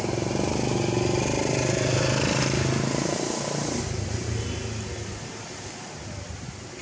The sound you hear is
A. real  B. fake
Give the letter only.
A